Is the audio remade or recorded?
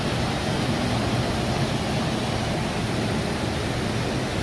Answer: recorded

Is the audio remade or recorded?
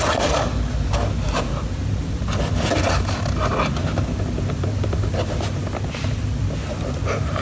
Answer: recorded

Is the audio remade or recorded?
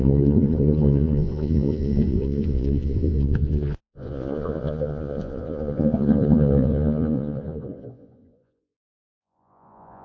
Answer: remade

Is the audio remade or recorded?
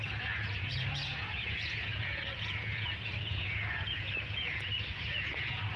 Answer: remade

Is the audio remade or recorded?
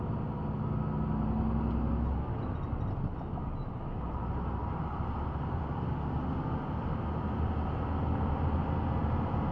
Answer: recorded